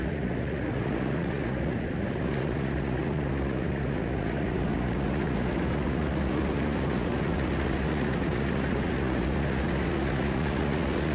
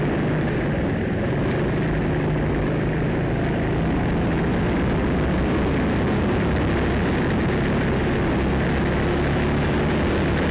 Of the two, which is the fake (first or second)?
first